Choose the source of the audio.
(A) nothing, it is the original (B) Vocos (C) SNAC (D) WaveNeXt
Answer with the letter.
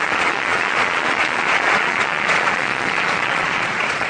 B